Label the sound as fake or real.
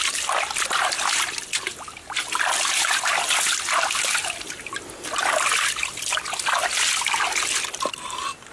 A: real